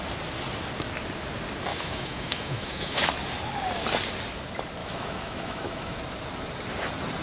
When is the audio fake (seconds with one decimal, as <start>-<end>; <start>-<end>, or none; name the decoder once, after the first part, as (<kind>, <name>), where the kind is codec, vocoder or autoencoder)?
1.7-3.1 (autoencoder, DAC-VAE); 4.8-6.0